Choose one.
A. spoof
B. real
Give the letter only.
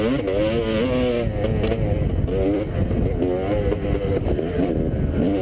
B